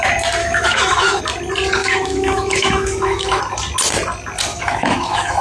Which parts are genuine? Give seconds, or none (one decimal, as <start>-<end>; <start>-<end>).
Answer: 0.0-0.4; 1.2-1.8; 3.4-4.5